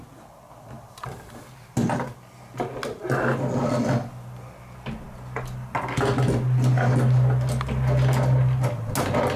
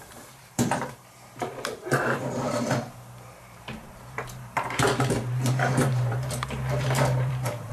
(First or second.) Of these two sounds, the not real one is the second